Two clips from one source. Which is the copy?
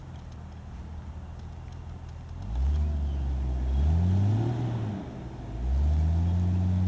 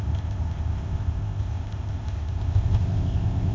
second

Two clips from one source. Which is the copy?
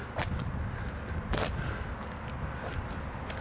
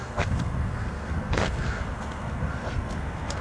second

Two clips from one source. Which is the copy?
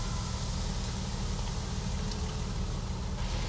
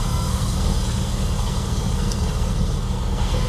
second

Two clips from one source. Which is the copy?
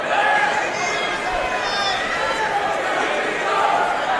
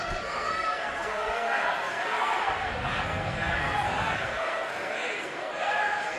second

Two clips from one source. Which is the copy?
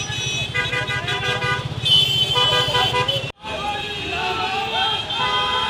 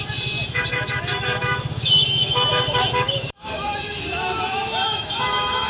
second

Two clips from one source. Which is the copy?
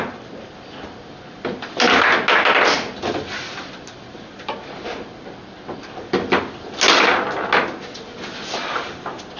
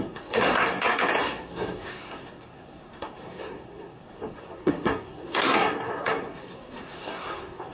second